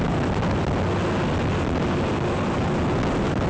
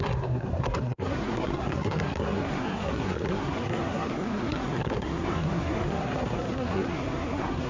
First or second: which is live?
first